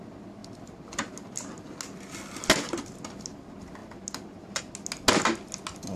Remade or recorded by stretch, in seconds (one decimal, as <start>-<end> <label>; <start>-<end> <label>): 0.0-6.0 recorded